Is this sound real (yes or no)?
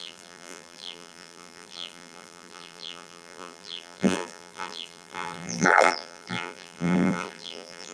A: no